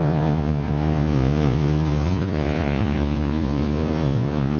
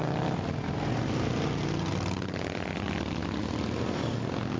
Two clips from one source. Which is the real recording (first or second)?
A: second